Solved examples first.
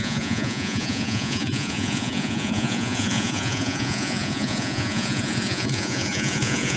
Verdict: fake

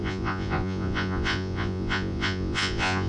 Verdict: fake